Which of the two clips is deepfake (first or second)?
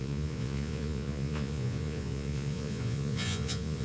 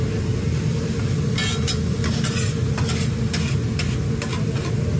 first